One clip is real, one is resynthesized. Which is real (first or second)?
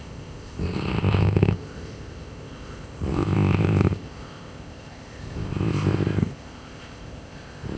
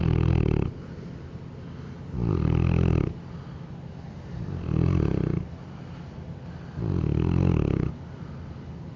second